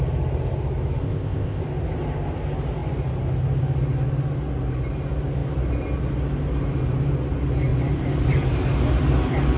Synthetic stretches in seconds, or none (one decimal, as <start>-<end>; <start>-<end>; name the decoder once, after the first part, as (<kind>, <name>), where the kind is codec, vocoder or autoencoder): 1.0-1.6 (codec, ZipCodec)